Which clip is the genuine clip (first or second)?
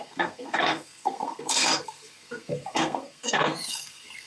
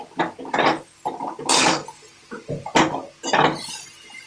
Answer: second